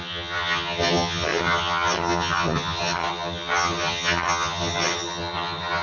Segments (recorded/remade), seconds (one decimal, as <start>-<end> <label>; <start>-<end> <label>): 0.0-5.8 remade